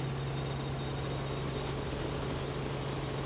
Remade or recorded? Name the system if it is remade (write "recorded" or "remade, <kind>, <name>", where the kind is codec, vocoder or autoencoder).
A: recorded